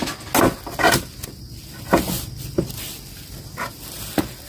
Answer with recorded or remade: recorded